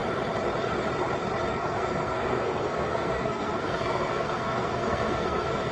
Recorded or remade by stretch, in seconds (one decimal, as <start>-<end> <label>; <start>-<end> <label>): 0.0-1.5 recorded; 1.5-5.7 remade